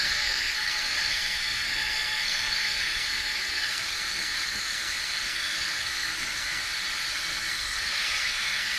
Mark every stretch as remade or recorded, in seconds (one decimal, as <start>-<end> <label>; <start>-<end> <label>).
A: 0.0-6.6 remade; 6.6-7.1 recorded; 7.1-8.8 remade